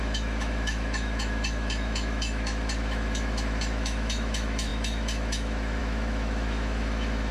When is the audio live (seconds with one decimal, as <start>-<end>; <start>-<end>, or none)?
none